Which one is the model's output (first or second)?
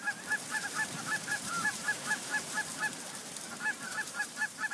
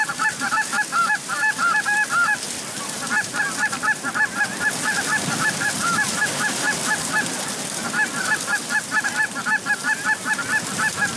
first